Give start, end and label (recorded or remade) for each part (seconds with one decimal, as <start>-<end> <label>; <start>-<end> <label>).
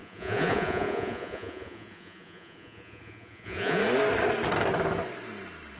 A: 0.0-3.8 remade; 3.8-5.8 recorded